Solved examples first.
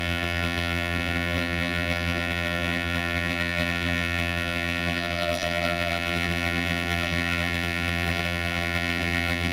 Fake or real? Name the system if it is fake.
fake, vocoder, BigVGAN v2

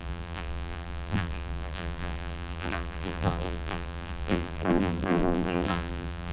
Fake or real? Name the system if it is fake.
fake, vocoder, BigVGAN v2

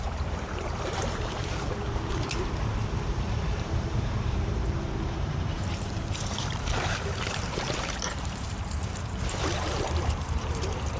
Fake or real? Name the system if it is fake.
fake, vocoder, BigVGAN v2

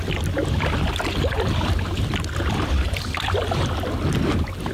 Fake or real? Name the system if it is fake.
real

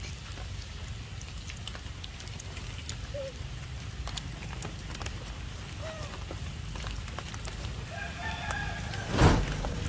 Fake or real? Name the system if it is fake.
fake, vocoder, BigVGAN v2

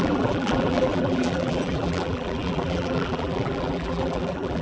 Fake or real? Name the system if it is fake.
fake, vocoder, BigVGAN v2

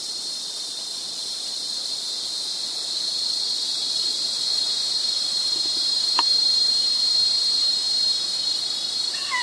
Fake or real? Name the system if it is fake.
fake, vocoder, BigVGAN v2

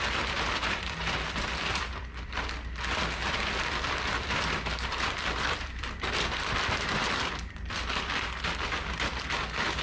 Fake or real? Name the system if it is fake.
fake, vocoder, BigVGAN v2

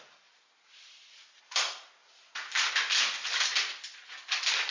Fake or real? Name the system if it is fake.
fake, vocoder, BigVGAN v2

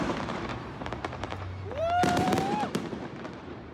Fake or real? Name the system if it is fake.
fake, vocoder, BigVGAN v2